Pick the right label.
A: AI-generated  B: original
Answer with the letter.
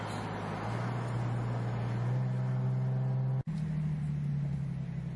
B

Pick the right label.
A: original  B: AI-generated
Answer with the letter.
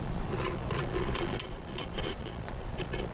B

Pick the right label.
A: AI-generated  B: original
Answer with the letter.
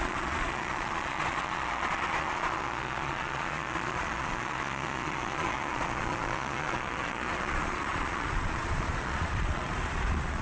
A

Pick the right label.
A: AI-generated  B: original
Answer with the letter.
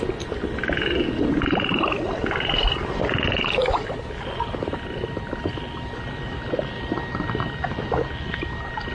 B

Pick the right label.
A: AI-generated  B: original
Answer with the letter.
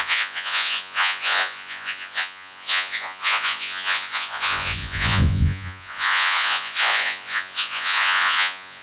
A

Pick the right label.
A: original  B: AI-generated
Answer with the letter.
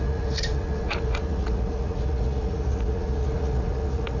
B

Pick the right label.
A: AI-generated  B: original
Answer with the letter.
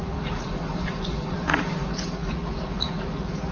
A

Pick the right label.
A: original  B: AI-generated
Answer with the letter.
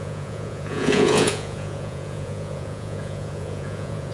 B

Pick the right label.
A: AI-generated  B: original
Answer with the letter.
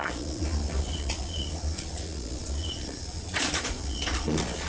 A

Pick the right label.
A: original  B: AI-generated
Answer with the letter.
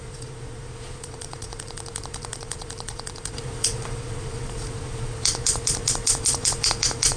B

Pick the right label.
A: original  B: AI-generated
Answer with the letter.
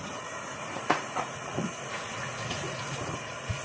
B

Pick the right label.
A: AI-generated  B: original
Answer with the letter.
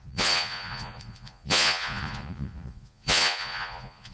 A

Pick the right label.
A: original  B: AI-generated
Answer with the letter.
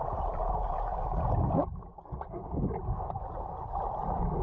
A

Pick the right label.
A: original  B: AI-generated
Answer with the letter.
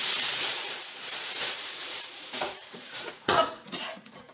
B